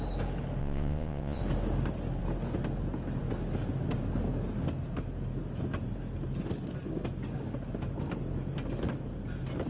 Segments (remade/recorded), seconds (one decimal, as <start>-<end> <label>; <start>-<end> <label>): 0.0-0.6 recorded; 0.6-1.4 remade; 1.4-9.7 recorded